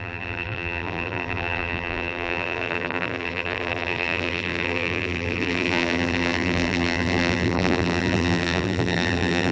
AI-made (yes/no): yes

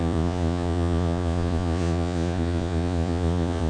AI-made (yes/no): yes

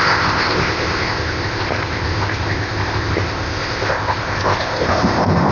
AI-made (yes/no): yes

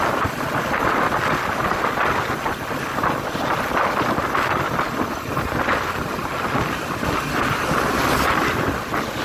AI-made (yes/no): no